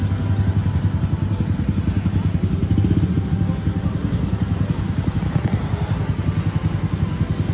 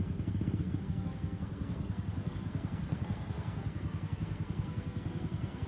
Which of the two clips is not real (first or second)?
second